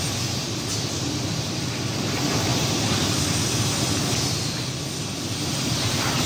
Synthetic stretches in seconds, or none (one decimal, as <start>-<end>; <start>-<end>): none